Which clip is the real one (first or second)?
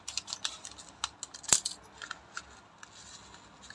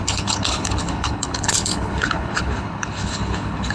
first